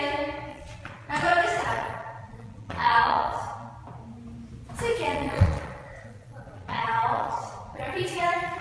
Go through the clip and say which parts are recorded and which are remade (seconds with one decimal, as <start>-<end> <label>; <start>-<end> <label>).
0.0-0.5 recorded; 0.5-3.7 remade; 3.7-4.9 recorded; 4.9-8.6 remade